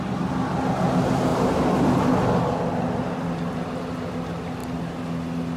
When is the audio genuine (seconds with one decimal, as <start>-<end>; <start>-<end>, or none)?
0.0-5.6